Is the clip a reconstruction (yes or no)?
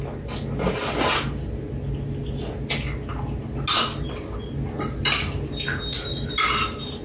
no